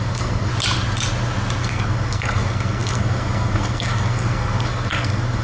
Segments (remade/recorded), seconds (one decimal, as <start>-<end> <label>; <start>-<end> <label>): 0.0-0.5 remade; 0.5-1.6 recorded; 1.6-5.4 remade